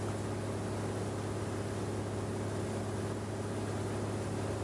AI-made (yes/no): no